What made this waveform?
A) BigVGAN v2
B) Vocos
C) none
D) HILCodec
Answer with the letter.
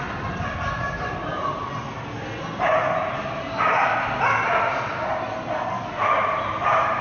C